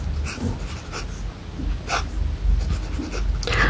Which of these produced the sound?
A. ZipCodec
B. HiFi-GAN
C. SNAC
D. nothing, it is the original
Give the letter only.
D